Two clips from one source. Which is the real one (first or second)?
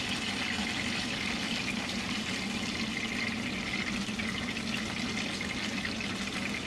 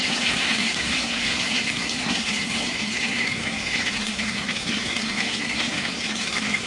first